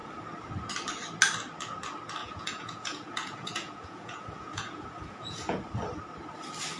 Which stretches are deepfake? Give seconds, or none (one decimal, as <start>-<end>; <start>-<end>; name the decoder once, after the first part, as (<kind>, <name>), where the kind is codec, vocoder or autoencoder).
2.2-5.6 (vocoder, Vocos)